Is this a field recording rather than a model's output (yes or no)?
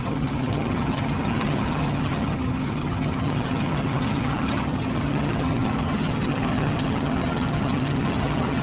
no